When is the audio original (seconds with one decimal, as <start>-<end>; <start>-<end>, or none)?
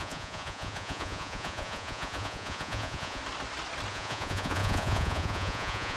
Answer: 3.2-3.9